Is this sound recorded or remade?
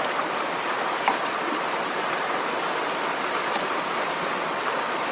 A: recorded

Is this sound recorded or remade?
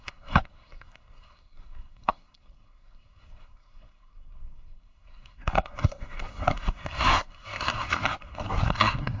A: remade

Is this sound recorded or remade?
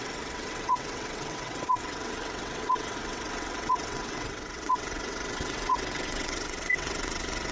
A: remade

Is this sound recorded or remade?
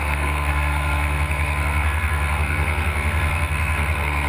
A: remade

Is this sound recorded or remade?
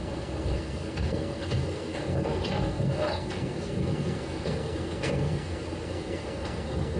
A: remade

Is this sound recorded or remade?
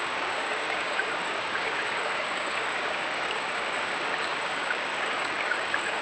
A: remade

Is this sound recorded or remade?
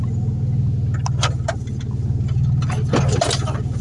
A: recorded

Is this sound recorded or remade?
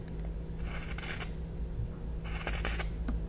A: recorded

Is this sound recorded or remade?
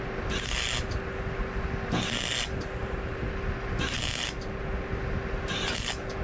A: recorded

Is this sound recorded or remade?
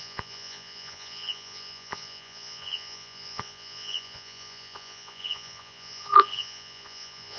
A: remade